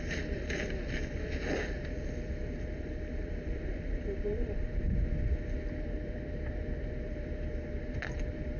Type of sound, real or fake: fake